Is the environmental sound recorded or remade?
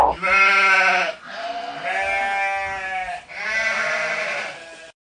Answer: recorded